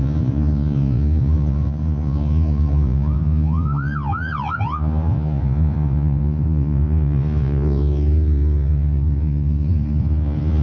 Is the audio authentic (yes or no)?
no